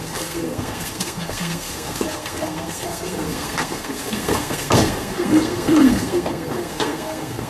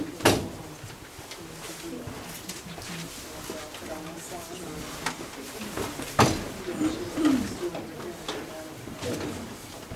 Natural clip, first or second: second